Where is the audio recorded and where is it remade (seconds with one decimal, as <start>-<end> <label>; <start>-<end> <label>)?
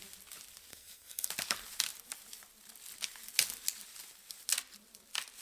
0.0-0.7 recorded; 0.7-1.3 remade; 1.3-5.4 recorded